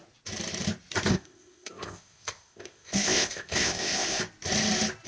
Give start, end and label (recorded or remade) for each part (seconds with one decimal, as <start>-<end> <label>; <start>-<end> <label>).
0.0-1.1 recorded; 1.1-4.2 remade; 4.2-5.1 recorded